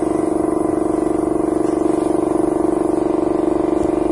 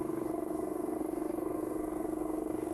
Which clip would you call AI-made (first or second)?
second